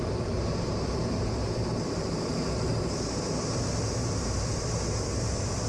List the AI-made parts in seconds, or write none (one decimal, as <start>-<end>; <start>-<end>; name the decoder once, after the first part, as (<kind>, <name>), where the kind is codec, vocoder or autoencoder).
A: 0.0-2.7 (vocoder, BigVGAN v2); 3.9-5.7